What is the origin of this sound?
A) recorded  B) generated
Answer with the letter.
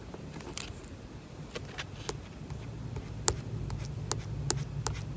A